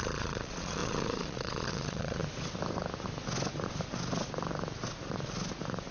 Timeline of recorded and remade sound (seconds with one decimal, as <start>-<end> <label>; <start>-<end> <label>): 0.0-2.2 remade; 2.2-5.9 recorded